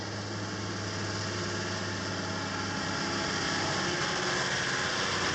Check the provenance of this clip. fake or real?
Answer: real